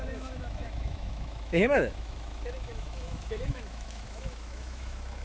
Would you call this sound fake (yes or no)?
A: yes